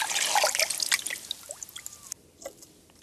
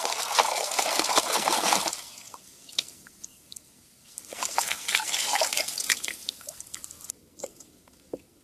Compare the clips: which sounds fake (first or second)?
second